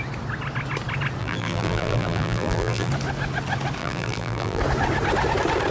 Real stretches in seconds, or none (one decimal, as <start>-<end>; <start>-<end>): 0.0-1.2; 2.9-3.8; 4.6-5.7

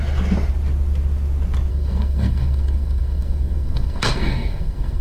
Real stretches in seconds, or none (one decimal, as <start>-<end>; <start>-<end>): 0.0-1.7

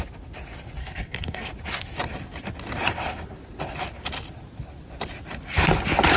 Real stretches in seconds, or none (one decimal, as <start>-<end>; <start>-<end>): 0.0-0.8; 1.5-6.2

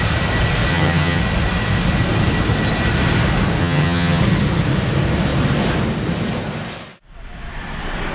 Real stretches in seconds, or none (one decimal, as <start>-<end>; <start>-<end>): 0.0-0.7; 1.2-3.6; 4.2-8.1

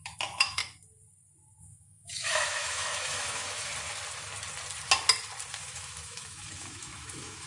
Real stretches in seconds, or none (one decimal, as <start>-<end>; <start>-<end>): 0.6-1.6; 3.7-5.6